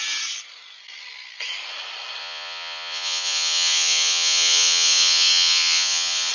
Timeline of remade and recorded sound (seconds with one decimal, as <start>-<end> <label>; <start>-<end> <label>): 0.0-2.2 recorded; 2.2-6.3 remade